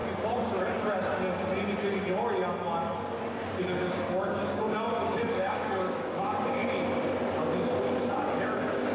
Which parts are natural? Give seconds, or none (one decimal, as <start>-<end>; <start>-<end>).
0.0-3.6; 6.6-8.0